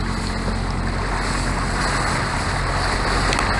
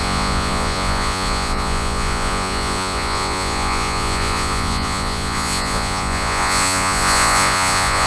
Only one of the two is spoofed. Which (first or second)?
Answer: second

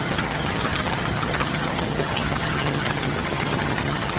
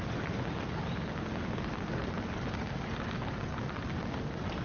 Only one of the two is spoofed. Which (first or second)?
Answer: first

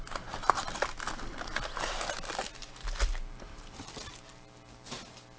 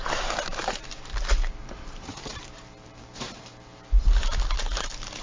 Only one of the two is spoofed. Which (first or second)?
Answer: second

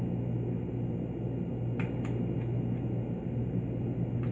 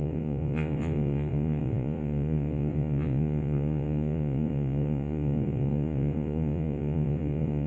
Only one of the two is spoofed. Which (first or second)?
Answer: second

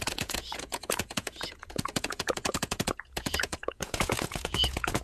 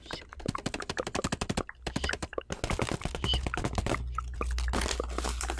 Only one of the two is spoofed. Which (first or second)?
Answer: first